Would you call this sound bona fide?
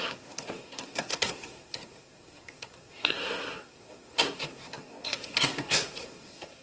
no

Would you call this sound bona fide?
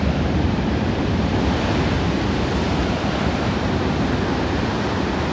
yes